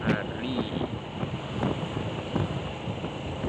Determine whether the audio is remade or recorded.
recorded